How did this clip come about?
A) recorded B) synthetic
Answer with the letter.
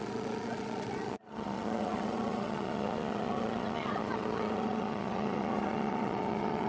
B